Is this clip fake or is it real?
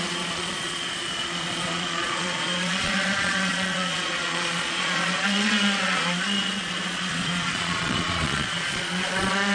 fake